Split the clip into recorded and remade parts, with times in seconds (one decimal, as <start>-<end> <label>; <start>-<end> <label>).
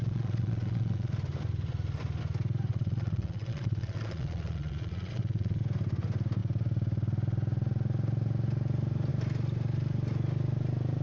0.0-1.1 remade; 1.1-2.7 recorded; 2.7-5.6 remade; 5.6-11.0 recorded